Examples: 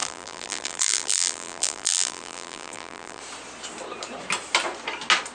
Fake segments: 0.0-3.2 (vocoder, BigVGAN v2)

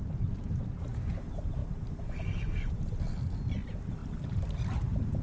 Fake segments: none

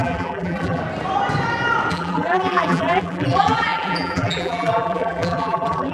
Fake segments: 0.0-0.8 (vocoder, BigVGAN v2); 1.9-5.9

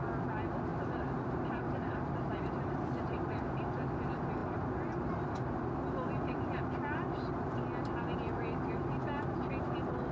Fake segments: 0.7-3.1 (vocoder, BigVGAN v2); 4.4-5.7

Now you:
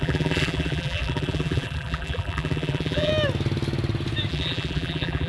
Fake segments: 0.0-3.1 (vocoder, BigVGAN v2); 4.3-5.3

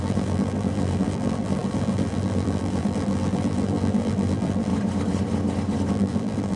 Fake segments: 0.0-4.7 (vocoder, BigVGAN v2); 5.9-6.6

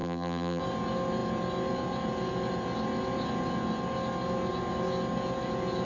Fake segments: 0.0-0.6 (vocoder, BigVGAN v2)